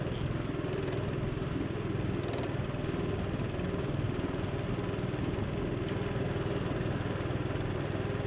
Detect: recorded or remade recorded